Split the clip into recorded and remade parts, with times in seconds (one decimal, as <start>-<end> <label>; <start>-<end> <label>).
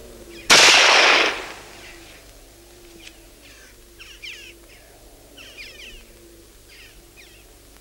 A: 0.0-7.8 recorded